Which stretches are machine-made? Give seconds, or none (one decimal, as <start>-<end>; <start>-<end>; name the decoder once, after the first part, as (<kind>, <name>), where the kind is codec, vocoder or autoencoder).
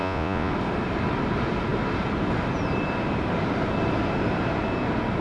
0.0-0.5 (vocoder, Vocos)